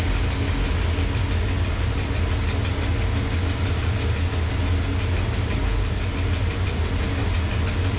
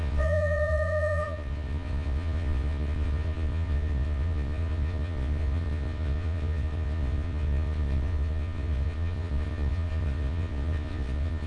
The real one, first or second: first